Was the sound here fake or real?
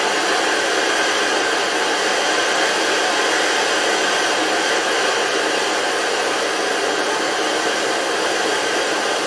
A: real